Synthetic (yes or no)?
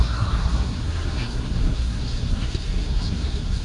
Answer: yes